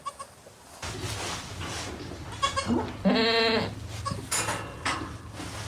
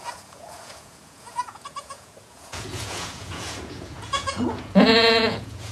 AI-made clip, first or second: second